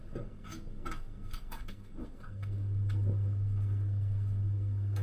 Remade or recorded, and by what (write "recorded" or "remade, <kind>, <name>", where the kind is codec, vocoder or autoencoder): remade, codec, SNAC